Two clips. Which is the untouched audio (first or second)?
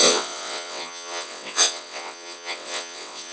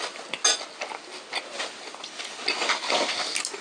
second